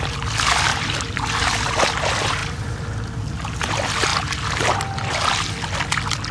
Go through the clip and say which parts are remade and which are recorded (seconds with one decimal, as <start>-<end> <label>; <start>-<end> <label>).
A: 0.0-0.7 recorded; 0.7-1.9 remade; 1.9-2.4 recorded; 2.4-3.3 remade; 3.3-6.3 recorded